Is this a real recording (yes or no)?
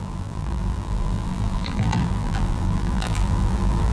no